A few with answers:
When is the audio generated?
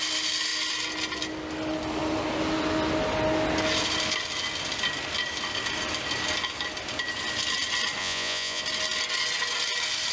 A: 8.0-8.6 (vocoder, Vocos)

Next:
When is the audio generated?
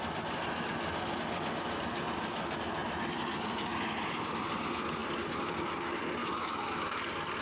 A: 6.2-6.8 (autoencoder, DAC-VAE)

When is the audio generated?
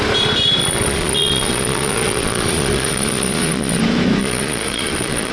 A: 0.6-3.8 (vocoder, Vocos); 4.2-5.3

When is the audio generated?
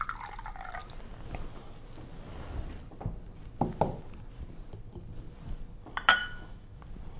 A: 6.2-6.8 (autoencoder, DAC-VAE)